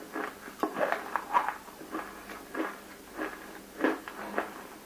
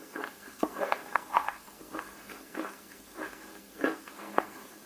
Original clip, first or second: first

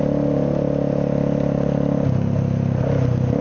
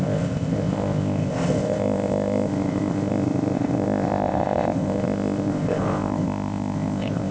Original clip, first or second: first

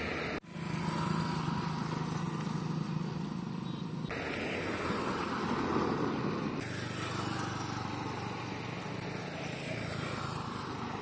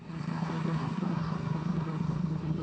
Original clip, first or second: first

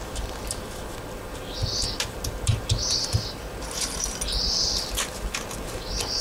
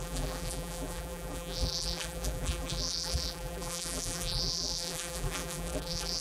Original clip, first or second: first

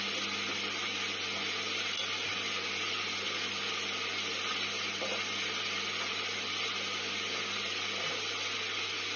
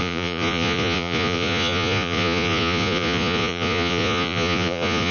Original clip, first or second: first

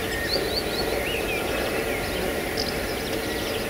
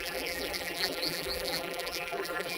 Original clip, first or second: first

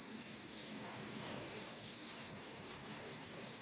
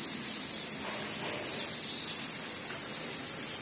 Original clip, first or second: second